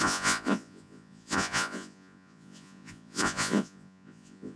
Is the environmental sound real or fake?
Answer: fake